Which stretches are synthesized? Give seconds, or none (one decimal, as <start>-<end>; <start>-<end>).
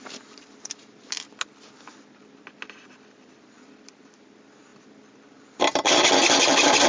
none